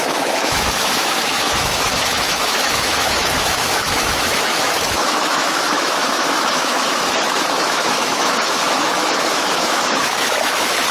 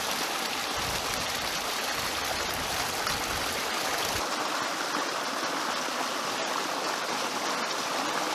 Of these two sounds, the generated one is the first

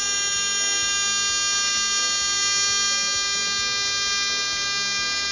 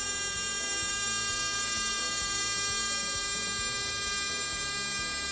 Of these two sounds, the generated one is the second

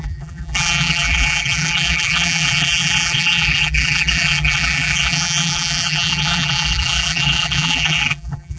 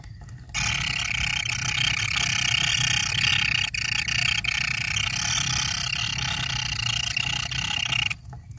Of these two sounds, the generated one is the first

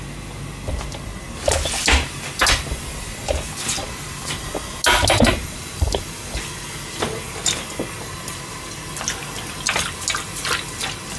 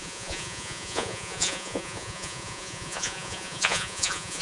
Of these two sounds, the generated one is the second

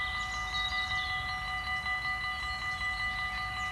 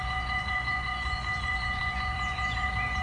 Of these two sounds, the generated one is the second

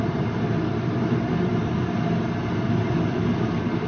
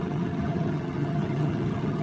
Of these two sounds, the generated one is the second